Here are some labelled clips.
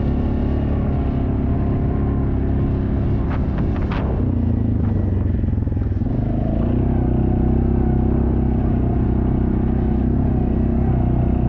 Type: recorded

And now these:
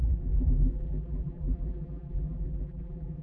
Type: remade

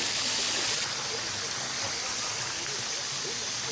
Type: recorded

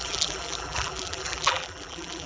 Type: remade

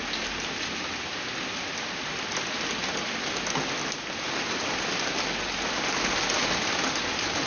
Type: recorded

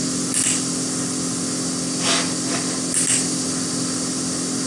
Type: recorded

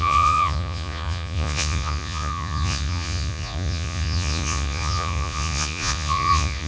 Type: remade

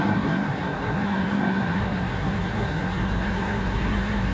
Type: remade